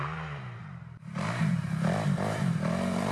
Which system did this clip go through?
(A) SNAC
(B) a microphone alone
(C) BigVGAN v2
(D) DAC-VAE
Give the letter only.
C